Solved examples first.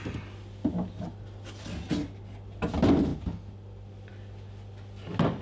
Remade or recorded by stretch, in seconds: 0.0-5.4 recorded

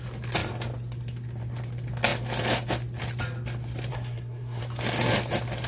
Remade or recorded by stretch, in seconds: 0.0-3.9 recorded; 3.9-4.6 remade; 4.6-5.7 recorded

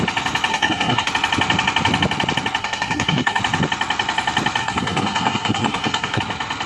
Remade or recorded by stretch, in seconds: 0.0-0.5 recorded; 0.5-1.1 remade; 1.1-2.6 recorded; 2.6-3.4 remade; 3.4-4.6 recorded; 4.6-6.2 remade; 6.2-6.7 recorded

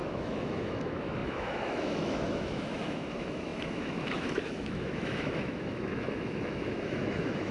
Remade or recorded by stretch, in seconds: 0.0-7.5 remade